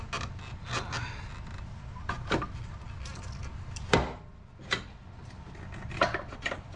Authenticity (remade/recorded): recorded